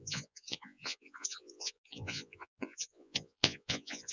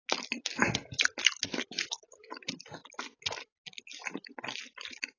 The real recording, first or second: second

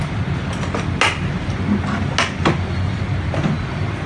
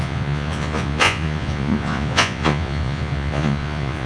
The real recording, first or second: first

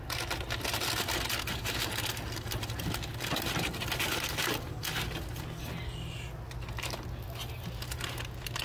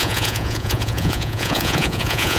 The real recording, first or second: first